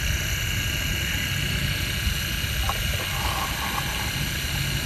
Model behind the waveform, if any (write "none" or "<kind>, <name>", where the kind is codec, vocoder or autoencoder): none